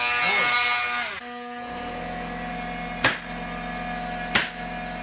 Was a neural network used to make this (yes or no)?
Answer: no